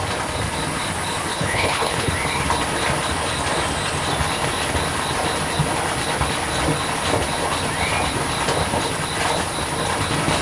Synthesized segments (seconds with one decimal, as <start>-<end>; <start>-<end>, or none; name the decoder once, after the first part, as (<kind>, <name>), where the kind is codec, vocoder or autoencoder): 1.3-2.1 (codec, HILCodec)